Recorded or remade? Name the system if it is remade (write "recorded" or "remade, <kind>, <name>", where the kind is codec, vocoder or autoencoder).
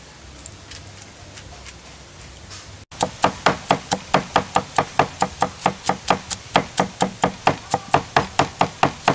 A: recorded